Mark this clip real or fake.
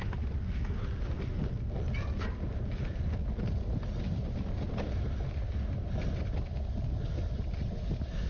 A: real